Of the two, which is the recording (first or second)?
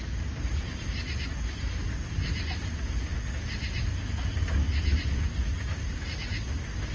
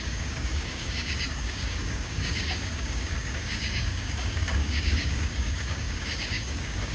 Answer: first